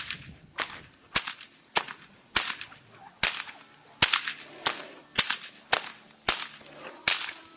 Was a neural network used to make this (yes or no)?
no